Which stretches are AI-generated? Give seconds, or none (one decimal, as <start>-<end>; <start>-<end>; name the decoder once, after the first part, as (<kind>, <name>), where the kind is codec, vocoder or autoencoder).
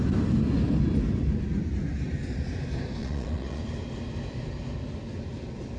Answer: 3.0-3.6 (vocoder, Vocos)